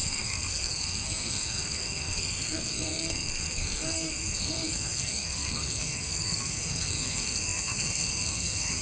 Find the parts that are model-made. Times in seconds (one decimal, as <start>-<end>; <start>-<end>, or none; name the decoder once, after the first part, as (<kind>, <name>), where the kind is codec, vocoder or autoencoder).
0.0-8.8 (codec, SNAC)